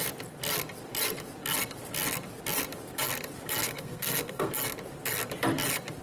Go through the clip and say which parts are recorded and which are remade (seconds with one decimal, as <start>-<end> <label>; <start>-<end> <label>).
0.0-3.6 recorded; 3.6-4.5 remade; 4.5-6.0 recorded